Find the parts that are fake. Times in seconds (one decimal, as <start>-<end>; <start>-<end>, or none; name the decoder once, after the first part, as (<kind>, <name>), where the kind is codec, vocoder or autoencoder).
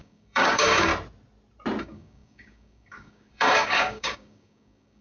0.0-0.9 (codec, DAC); 1.8-5.0